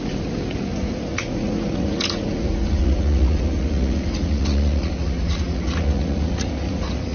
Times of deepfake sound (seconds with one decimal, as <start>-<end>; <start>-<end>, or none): 0.0-7.1